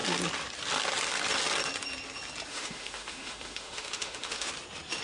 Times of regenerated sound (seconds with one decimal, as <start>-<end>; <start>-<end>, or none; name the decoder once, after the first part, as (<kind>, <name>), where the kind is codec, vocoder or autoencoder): 2.5-4.5 (autoencoder, DAC-VAE)

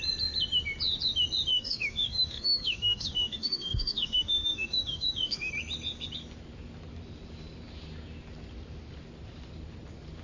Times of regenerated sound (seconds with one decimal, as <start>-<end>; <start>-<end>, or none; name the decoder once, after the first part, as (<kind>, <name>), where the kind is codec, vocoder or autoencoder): 1.5-5.5 (autoencoder, DAC-VAE)

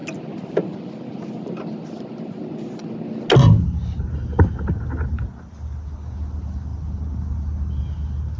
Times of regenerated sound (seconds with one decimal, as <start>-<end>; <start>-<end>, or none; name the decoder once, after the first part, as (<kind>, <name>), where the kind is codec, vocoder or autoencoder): none

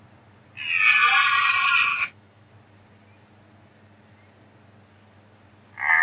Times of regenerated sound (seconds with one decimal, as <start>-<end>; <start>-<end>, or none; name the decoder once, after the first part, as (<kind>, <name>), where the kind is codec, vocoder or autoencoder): 1.9-2.5 (autoencoder, DAC-VAE)

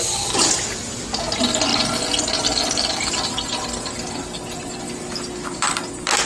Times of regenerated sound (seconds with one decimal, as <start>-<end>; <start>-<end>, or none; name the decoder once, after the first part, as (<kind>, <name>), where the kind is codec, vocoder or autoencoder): none

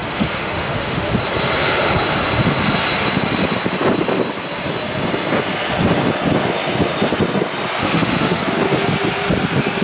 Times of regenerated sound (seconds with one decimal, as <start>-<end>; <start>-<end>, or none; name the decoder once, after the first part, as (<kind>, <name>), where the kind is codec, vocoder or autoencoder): 0.0-1.1 (autoencoder, DAC-VAE); 7.8-8.4

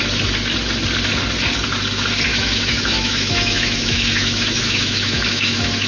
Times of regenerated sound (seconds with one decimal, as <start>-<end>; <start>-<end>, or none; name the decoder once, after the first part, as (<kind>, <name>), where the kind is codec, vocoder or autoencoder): 2.3-5.9 (autoencoder, DAC-VAE)

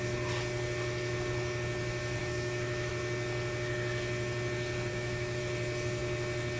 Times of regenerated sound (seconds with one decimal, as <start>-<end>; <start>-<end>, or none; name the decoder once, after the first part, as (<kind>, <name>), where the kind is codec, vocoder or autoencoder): 2.2-2.9 (autoencoder, DAC-VAE); 4.9-5.4